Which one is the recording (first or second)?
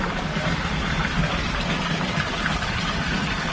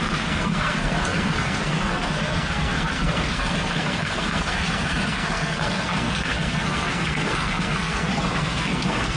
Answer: first